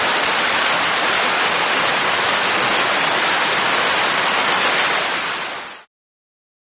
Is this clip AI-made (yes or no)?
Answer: no